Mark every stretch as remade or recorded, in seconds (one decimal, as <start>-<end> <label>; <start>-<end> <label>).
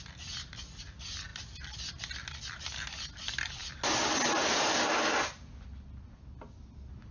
0.0-7.1 recorded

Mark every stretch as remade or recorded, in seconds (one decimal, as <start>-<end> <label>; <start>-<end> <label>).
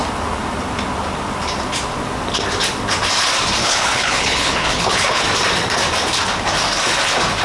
0.0-3.6 recorded; 3.6-5.2 remade; 5.2-7.4 recorded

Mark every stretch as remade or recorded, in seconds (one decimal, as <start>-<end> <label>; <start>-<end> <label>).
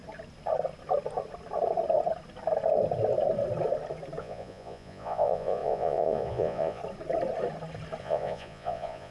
0.0-4.2 recorded; 4.2-6.8 remade; 6.8-8.0 recorded; 8.0-9.1 remade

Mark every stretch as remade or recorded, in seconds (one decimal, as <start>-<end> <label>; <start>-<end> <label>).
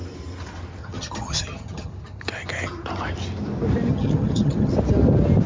0.0-0.8 recorded; 0.8-1.9 remade; 1.9-3.9 recorded; 3.9-4.7 remade; 4.7-5.5 recorded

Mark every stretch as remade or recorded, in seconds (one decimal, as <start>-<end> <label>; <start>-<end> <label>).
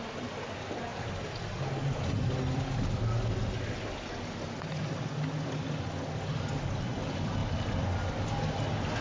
0.0-9.0 recorded